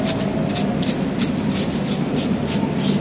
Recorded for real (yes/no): yes